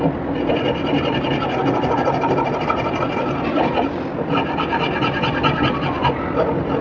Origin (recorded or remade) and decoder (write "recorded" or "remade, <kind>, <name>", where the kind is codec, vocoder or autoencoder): recorded